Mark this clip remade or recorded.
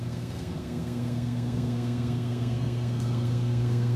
remade